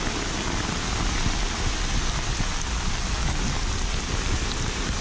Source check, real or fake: real